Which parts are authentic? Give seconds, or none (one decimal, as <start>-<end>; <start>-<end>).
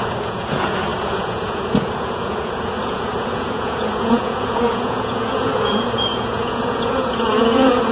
none